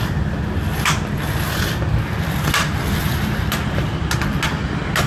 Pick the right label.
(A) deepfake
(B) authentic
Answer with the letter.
B